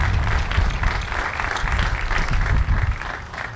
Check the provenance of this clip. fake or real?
real